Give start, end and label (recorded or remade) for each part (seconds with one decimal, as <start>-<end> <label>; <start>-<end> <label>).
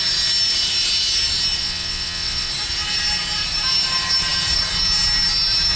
0.0-1.6 recorded; 1.6-2.5 remade; 2.5-5.8 recorded